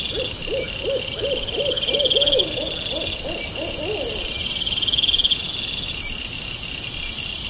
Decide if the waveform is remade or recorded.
recorded